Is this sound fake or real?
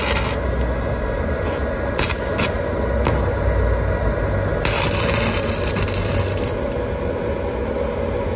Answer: real